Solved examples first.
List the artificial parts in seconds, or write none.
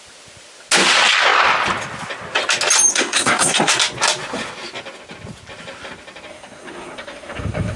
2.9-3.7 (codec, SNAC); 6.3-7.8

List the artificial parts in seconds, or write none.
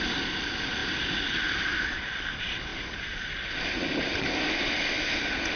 none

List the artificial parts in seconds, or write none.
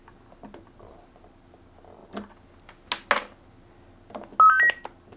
none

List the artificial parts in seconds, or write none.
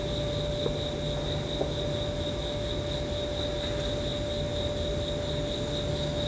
none